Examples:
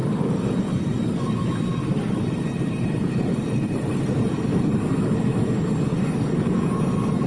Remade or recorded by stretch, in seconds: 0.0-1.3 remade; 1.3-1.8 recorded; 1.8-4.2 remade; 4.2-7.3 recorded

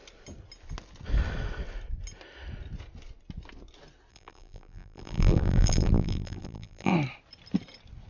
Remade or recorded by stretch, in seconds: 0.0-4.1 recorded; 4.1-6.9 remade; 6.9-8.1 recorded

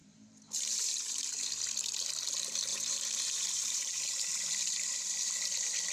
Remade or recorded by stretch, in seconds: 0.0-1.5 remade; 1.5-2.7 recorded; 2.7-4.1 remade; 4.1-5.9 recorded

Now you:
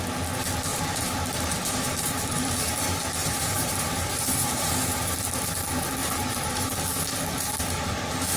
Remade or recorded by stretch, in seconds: 0.0-0.7 recorded; 0.7-2.6 remade; 2.6-3.2 recorded; 3.2-5.5 remade; 5.5-6.0 recorded; 6.0-6.7 remade; 6.7-8.4 recorded